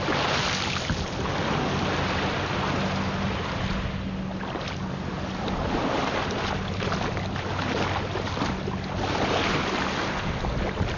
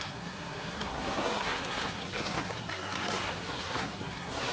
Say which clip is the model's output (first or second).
second